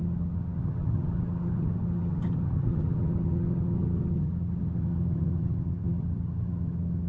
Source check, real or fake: fake